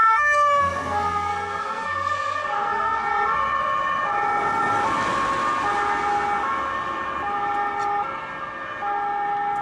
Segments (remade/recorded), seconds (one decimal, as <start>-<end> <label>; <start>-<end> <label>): 0.0-3.1 remade; 3.1-9.6 recorded